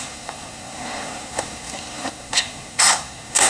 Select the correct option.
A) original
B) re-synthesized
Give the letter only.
B